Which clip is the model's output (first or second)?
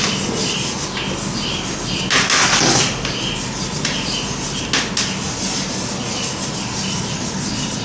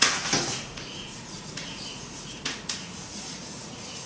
second